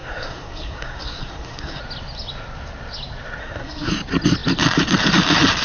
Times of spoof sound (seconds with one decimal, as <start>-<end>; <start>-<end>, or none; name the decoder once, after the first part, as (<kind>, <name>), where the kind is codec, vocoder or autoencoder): 0.0-1.8 (codec, SNAC); 3.4-3.9